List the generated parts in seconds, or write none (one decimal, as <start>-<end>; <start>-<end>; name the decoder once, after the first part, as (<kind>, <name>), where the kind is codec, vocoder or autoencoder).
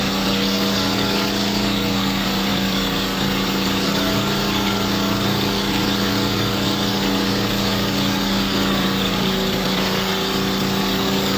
0.0-10.1 (codec, DAC); 10.8-11.4